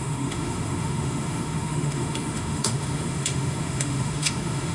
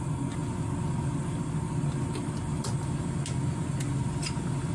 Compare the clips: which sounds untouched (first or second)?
second